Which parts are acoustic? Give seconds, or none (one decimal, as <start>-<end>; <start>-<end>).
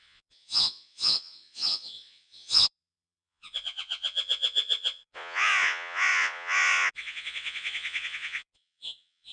none